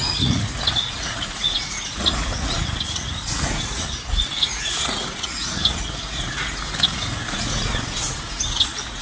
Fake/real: fake